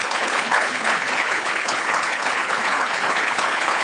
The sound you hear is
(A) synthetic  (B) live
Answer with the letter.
A